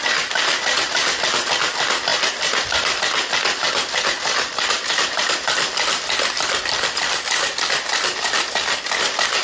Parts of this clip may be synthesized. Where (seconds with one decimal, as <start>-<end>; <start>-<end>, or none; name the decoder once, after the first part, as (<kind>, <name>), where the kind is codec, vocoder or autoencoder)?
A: none

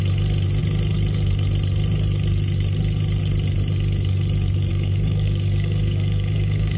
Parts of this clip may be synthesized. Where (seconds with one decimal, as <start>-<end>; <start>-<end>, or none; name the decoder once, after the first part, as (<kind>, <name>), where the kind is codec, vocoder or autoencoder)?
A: 4.7-6.8 (codec, DAC)

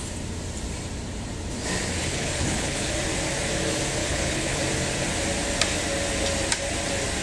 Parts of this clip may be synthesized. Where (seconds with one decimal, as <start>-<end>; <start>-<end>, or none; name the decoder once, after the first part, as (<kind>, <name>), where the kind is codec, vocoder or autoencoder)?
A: 2.0-2.9 (codec, HILCodec); 4.0-4.6

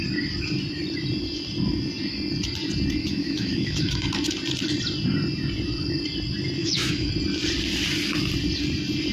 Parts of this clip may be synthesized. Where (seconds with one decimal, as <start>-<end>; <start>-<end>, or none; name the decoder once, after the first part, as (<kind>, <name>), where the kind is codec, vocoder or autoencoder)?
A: 3.0-4.1 (autoencoder, DAC-VAE); 6.6-7.1

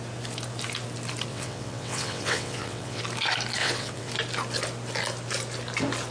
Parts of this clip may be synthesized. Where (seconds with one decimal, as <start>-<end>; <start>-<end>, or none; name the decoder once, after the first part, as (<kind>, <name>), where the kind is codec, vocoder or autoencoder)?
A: 1.3-3.0 (vocoder, WaveNeXt); 3.6-4.1

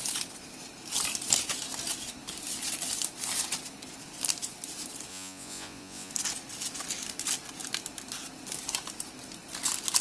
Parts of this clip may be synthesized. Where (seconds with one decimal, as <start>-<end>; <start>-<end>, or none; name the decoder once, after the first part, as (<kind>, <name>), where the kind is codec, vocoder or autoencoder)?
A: 5.1-6.1 (vocoder, Vocos)

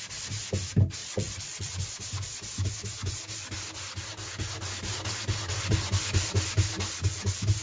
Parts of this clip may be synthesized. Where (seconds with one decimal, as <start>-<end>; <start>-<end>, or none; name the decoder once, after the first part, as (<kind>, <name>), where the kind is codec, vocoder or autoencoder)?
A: 1.0-1.7 (vocoder, WaveNeXt)

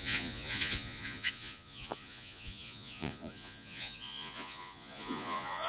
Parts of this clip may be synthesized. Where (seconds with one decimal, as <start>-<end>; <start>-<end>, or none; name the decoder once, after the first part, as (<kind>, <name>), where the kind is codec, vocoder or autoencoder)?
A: 0.0-5.7 (vocoder, Vocos)